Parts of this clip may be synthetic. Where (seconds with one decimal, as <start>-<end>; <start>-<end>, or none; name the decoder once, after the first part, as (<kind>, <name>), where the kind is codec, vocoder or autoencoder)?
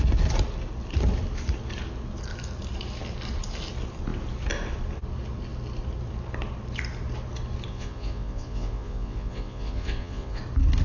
7.7-10.4 (vocoder, Vocos)